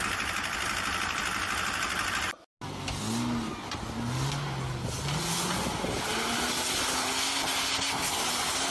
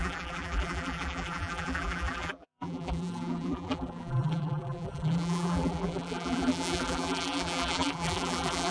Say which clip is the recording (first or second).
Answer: first